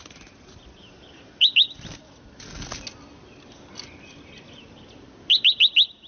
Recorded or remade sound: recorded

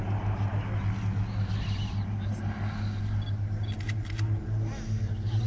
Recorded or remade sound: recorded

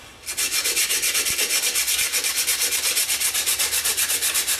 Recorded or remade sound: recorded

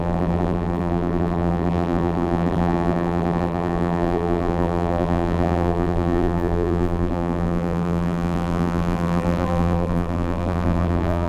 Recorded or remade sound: remade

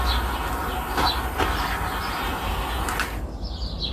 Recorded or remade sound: recorded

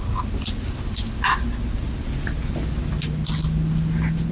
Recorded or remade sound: recorded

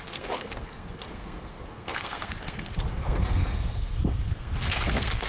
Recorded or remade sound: remade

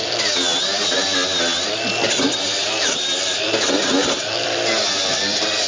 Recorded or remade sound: remade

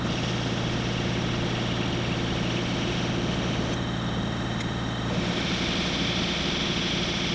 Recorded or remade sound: recorded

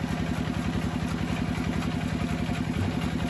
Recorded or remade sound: recorded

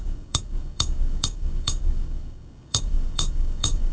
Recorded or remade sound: remade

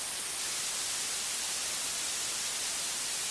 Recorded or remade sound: recorded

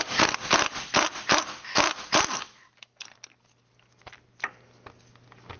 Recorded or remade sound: recorded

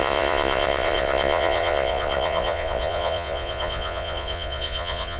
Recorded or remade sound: remade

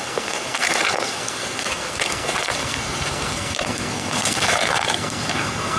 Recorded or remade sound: remade